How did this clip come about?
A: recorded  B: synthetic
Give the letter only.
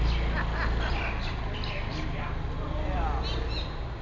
A